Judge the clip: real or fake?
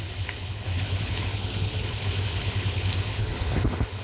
fake